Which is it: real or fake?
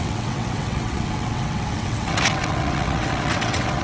fake